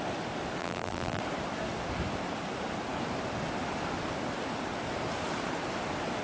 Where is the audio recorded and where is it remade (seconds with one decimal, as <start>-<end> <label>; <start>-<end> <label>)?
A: 0.0-0.6 recorded; 0.6-1.2 remade; 1.2-6.2 recorded